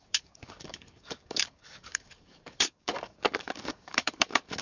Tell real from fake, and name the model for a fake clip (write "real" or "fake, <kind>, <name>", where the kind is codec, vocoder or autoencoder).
fake, codec, DAC